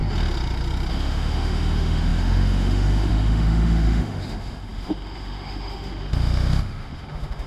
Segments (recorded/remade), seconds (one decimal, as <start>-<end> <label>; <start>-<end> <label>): 0.0-0.9 recorded; 0.9-7.5 remade